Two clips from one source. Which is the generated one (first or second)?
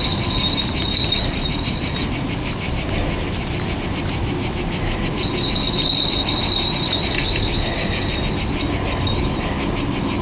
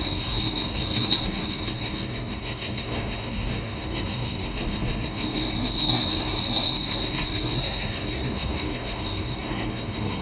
second